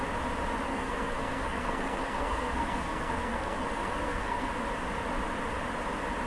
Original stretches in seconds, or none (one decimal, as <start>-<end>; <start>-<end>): 0.0-0.7; 4.5-6.3